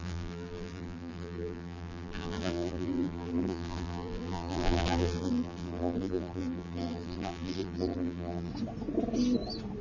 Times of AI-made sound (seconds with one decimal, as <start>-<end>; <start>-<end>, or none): 0.0-8.5